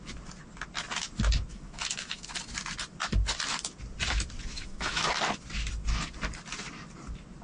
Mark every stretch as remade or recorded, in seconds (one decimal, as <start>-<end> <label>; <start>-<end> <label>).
0.0-1.5 recorded; 1.5-2.3 remade; 2.3-4.5 recorded; 4.5-5.1 remade; 5.1-7.4 recorded